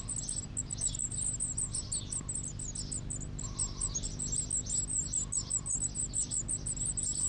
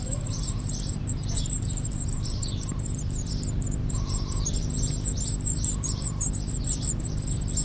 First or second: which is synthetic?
second